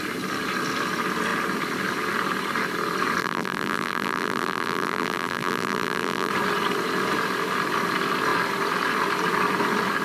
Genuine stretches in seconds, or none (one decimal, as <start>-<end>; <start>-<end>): 0.0-3.2; 6.3-10.0